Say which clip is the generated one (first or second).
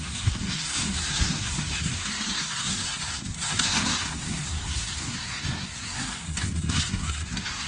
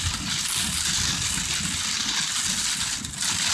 first